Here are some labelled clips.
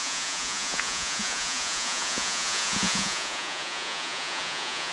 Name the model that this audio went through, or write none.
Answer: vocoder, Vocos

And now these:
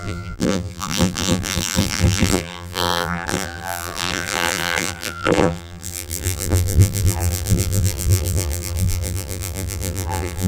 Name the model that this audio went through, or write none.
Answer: vocoder, BigVGAN v2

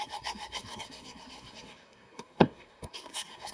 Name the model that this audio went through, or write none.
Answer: codec, SNAC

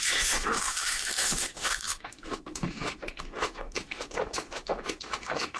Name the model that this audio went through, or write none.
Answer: autoencoder, DAC-VAE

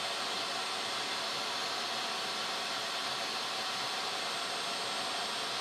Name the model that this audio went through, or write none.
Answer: none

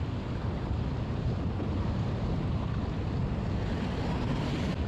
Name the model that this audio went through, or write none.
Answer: none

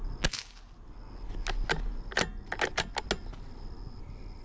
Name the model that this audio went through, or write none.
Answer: none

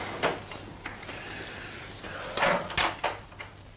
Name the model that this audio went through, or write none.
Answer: none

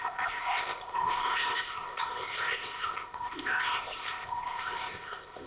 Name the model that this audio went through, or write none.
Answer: codec, ZipCodec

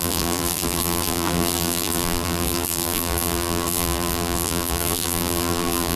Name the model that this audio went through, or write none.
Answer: vocoder, BigVGAN v2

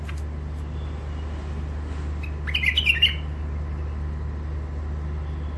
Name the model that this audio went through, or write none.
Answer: none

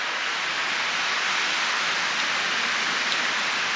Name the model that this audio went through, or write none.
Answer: none